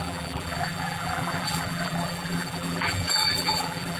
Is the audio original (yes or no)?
no